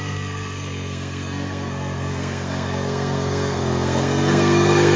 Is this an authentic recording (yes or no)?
no